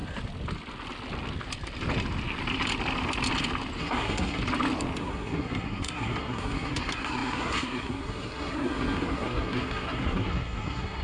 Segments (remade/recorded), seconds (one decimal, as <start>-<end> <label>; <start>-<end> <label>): 0.0-3.8 recorded; 3.8-4.4 remade; 4.4-5.0 recorded; 5.0-11.0 remade